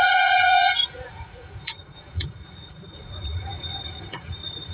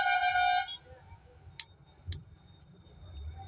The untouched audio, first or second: second